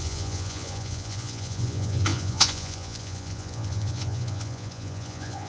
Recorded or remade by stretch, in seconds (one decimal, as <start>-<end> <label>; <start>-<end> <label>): 0.0-5.5 remade